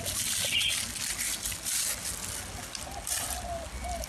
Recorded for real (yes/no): yes